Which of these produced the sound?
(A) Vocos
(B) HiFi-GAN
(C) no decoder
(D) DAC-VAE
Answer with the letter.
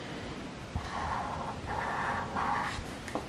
C